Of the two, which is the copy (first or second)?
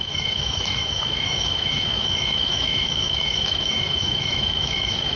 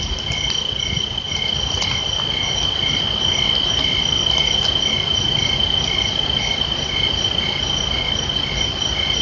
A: first